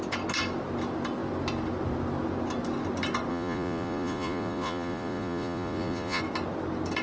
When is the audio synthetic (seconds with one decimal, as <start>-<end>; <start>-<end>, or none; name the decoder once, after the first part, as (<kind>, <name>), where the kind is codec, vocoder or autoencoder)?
3.3-6.2 (vocoder, Vocos)